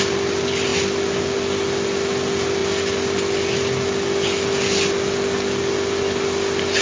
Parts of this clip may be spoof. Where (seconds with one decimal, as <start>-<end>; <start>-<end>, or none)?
none